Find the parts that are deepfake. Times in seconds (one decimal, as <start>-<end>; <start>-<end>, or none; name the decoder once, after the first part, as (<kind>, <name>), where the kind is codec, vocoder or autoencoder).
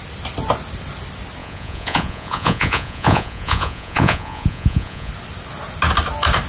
1.4-5.1 (vocoder, Vocos)